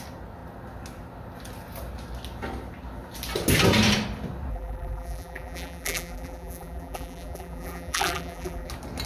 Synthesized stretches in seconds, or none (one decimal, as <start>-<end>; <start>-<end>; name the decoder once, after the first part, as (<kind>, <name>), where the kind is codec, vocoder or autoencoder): 4.5-8.7 (vocoder, BigVGAN v2)